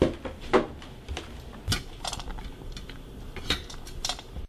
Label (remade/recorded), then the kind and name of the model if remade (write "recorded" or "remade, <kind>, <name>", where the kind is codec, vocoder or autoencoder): recorded